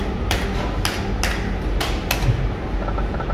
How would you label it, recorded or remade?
recorded